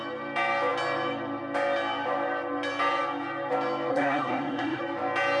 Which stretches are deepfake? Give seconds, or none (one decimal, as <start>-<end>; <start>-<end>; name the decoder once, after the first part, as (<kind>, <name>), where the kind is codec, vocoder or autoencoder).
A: 3.9-4.8 (codec, SNAC)